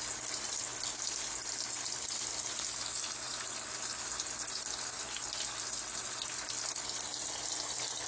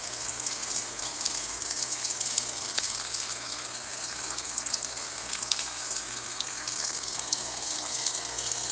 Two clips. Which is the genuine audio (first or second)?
first